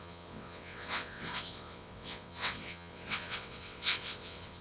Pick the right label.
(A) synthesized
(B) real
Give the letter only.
A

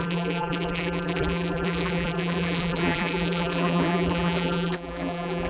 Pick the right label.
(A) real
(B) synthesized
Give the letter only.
B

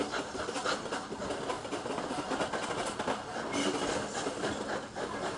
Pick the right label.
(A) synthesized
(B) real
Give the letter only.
B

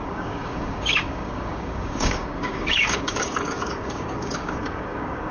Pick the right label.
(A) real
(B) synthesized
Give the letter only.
B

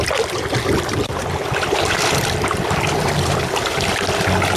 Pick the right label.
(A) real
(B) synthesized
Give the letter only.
A